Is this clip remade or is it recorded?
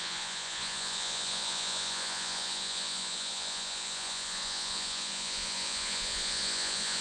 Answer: remade